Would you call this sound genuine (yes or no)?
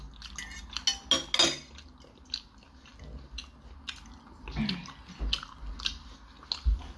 yes